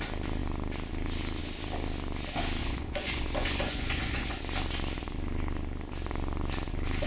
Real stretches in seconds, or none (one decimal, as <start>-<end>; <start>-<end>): 0.0-2.6; 4.4-7.1